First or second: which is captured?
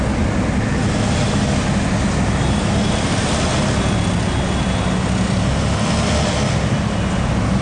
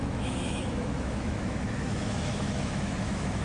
first